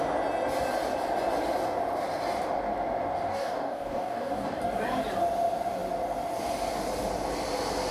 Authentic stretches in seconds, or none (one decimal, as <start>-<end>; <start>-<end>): 0.0-3.3; 4.6-7.9